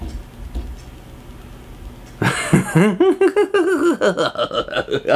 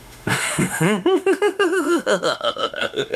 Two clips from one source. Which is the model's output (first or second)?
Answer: second